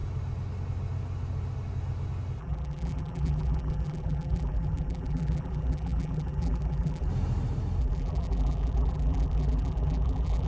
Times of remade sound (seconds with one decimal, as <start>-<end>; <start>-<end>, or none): 2.4-7.1; 7.8-10.5

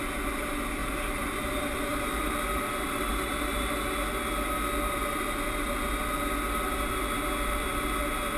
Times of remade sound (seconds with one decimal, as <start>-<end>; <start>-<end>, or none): 0.8-3.7

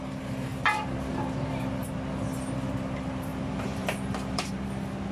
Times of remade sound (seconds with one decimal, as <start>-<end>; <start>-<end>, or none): 3.3-4.5

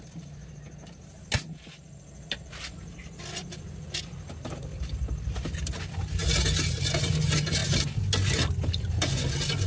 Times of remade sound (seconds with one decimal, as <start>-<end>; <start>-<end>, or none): none

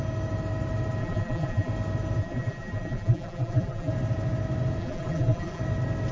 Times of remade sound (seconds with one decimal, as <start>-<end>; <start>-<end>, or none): 1.0-1.7; 2.2-3.9; 4.8-5.6

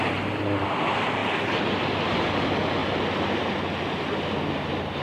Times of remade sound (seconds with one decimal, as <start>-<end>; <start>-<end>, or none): 1.2-2.2